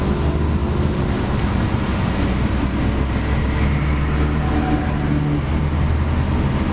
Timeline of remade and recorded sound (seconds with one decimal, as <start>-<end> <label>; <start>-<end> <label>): 0.0-6.7 recorded

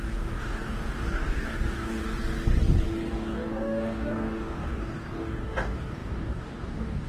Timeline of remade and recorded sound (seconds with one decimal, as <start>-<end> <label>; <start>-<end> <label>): 0.0-2.0 remade; 2.0-3.1 recorded; 3.1-7.1 remade